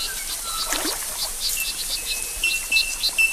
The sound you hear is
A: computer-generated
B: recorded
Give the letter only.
B